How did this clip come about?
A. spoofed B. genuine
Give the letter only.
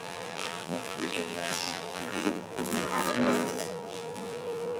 A